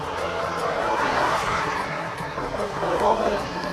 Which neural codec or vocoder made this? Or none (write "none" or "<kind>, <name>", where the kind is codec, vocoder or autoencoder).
codec, SNAC